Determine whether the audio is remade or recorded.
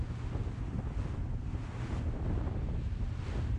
recorded